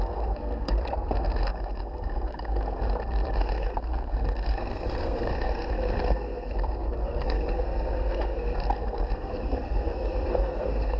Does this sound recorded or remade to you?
remade